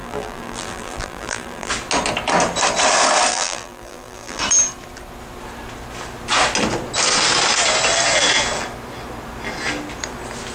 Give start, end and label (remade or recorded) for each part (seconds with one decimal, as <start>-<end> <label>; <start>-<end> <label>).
0.0-1.7 remade; 1.7-3.3 recorded; 3.3-4.4 remade; 4.4-10.5 recorded